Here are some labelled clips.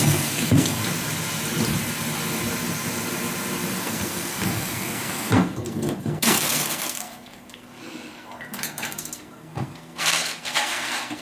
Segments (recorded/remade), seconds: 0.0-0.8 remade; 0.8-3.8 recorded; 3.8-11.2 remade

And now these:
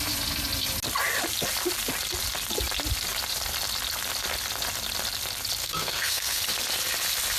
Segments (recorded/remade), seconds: 0.0-5.6 recorded; 5.6-6.4 remade; 6.4-7.4 recorded